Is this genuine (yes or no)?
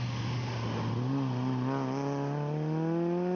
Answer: yes